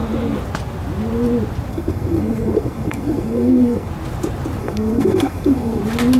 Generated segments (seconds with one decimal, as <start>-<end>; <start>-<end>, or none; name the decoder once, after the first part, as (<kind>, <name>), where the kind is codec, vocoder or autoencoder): 1.7-3.9 (codec, SNAC); 4.6-5.8